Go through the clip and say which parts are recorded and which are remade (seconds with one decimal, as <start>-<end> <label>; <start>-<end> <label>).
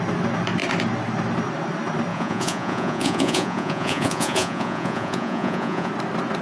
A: 0.0-2.1 recorded; 2.1-5.9 remade; 5.9-6.4 recorded